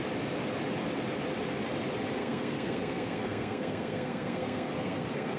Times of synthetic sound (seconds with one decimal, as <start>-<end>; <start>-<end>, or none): 2.2-5.4